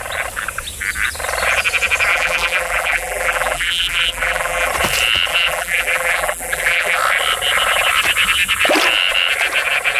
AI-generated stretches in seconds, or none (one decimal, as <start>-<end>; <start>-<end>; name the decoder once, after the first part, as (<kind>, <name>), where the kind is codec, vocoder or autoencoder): 2.1-4.7 (vocoder, BigVGAN v2); 5.3-7.0